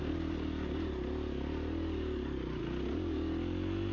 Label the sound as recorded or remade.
recorded